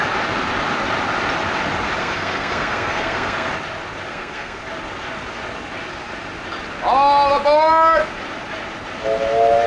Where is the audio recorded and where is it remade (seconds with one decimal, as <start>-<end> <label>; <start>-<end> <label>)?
0.0-2.0 recorded; 2.0-3.5 remade; 3.5-4.1 recorded; 4.1-4.6 remade; 4.6-9.7 recorded